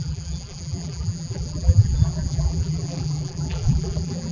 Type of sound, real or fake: fake